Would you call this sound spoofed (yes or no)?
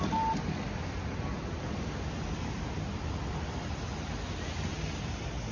no